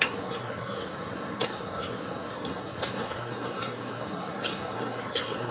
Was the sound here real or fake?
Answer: fake